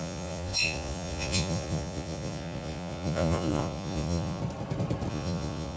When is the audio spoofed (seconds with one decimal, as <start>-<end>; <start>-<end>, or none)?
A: 0.0-4.4; 5.1-5.8